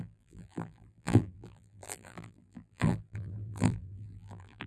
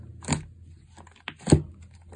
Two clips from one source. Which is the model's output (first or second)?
first